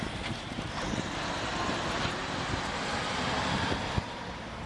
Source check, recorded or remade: recorded